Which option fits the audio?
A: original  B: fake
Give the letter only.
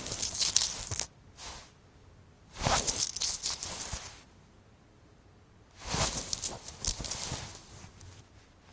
A